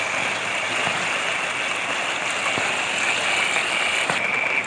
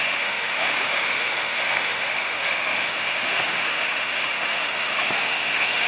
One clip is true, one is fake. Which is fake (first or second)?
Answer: second